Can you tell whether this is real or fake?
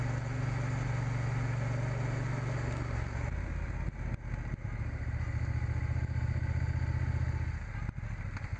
real